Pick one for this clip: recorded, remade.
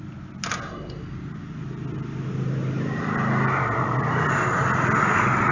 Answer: recorded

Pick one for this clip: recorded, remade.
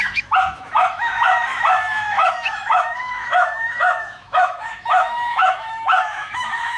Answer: remade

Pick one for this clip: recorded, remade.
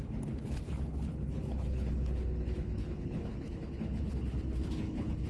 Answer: remade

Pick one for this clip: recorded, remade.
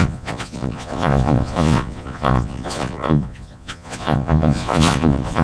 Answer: remade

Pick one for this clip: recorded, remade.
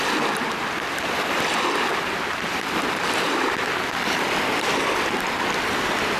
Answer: recorded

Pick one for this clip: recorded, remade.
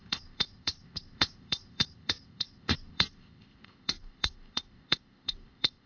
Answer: remade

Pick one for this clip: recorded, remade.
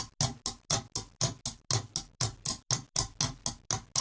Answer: recorded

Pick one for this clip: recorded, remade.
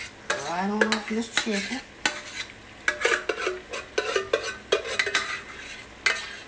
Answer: recorded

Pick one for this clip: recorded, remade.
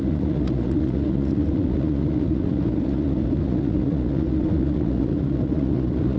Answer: remade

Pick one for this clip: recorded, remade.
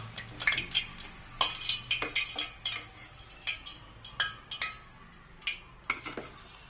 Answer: recorded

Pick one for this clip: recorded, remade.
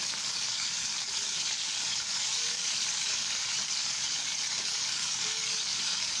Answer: remade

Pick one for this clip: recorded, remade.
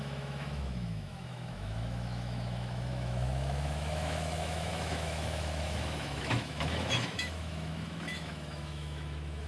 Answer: remade